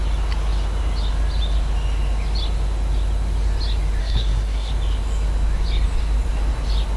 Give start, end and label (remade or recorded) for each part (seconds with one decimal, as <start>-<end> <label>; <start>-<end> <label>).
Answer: 0.0-4.0 recorded; 4.0-4.7 remade; 4.7-7.0 recorded

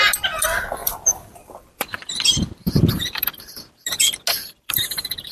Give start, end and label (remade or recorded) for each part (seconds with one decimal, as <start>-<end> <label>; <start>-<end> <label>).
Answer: 0.0-0.8 recorded; 0.8-4.0 remade; 4.0-4.4 recorded; 4.4-5.3 remade